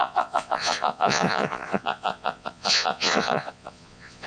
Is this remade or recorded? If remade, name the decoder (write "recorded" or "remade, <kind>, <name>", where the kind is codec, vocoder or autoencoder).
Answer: remade, vocoder, Vocos